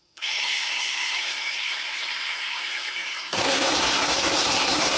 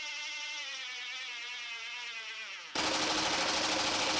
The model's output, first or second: first